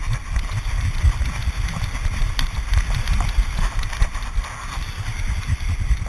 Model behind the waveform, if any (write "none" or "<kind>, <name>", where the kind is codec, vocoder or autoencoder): none